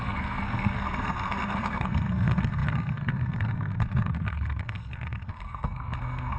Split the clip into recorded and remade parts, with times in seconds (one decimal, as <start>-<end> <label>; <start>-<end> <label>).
0.0-6.4 remade